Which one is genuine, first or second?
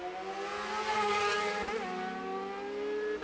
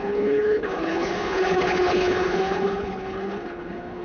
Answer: first